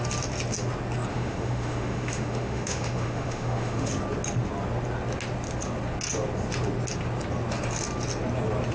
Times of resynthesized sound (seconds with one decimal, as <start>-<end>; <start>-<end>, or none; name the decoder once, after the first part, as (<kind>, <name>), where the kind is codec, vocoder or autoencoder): 1.1-3.9 (autoencoder, DAC-VAE)